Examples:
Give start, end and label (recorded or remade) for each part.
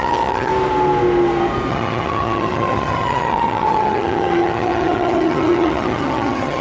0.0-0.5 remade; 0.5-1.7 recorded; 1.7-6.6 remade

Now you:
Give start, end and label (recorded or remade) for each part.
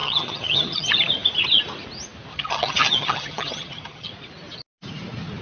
0.0-0.9 remade; 0.9-2.3 recorded; 2.3-4.1 remade; 4.1-5.4 recorded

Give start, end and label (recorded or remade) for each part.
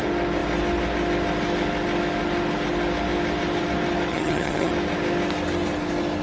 0.0-4.1 recorded; 4.1-4.7 remade; 4.7-6.2 recorded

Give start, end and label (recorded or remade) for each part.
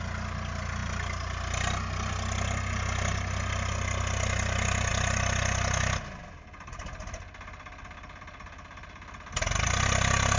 0.0-10.4 recorded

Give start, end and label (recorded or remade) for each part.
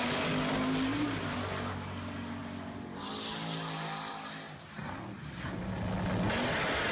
0.0-6.9 recorded